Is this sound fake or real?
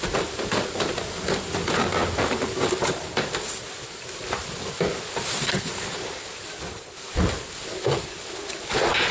real